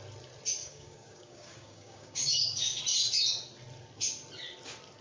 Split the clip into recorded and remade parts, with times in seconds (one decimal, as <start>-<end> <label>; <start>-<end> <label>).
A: 0.0-0.6 recorded; 0.6-2.8 remade; 2.8-5.0 recorded